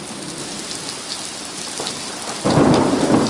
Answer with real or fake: real